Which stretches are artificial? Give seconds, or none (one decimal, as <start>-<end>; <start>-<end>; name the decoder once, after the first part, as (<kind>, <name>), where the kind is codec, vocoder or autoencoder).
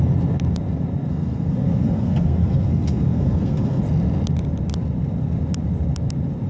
1.1-3.8 (codec, SNAC)